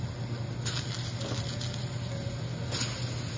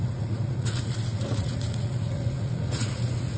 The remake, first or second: second